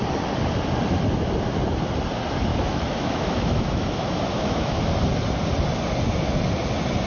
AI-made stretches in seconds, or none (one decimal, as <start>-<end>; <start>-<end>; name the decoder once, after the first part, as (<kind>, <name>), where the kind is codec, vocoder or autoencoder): 2.5-4.9 (autoencoder, DAC-VAE)